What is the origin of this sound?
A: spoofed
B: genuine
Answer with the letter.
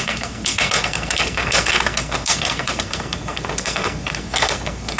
A